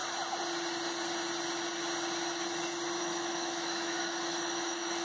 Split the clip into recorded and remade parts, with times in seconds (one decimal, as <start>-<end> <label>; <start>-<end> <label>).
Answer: 0.0-3.0 recorded; 3.0-5.0 remade